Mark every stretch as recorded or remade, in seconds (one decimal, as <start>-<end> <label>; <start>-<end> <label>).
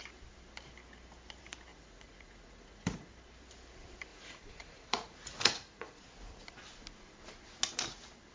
0.0-1.7 recorded; 1.7-3.1 remade; 3.1-4.1 recorded; 4.1-6.0 remade; 6.0-8.3 recorded